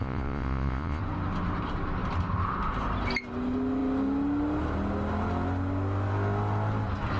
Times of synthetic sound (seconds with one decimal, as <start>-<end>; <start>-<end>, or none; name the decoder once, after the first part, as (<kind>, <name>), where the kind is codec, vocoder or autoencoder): 0.0-1.0 (vocoder, Vocos)